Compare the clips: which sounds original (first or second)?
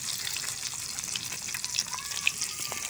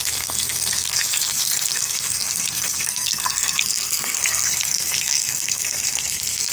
first